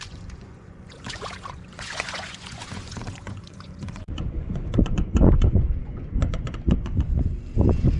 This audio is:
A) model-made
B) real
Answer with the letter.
A